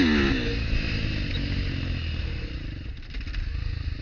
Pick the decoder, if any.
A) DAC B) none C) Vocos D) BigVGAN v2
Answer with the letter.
B